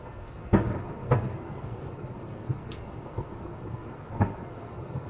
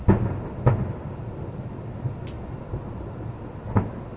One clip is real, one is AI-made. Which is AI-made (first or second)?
first